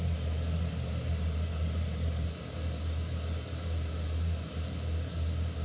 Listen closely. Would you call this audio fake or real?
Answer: real